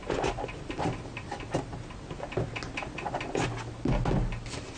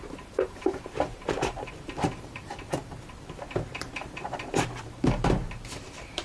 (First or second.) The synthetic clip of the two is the second